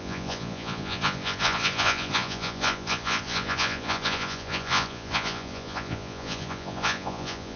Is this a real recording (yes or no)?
no